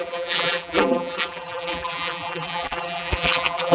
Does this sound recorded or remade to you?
remade